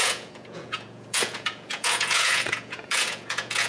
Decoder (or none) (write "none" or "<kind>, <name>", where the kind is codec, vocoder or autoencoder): vocoder, Vocos